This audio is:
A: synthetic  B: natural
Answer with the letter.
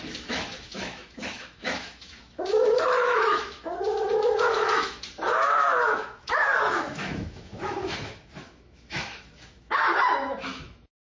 A